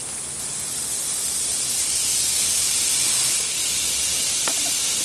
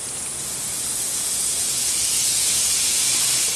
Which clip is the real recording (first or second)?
first